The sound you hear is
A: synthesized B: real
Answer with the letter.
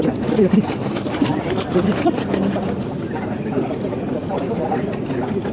B